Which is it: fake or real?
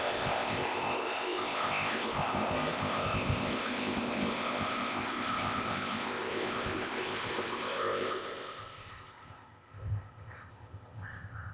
fake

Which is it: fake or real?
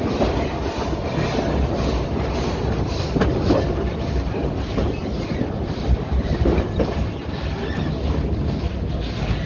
real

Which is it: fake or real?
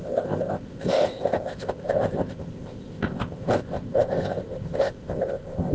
fake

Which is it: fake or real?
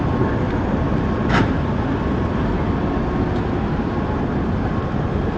real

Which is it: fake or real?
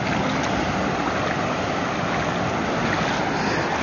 real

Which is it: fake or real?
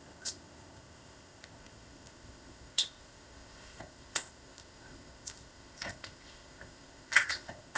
fake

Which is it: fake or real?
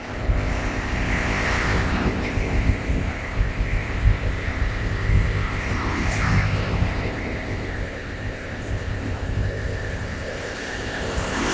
fake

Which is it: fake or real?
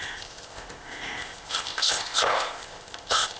fake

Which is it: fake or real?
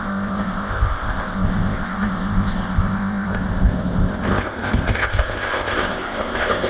fake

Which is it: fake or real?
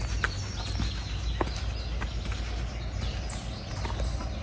real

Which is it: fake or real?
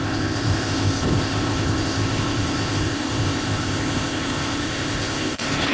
fake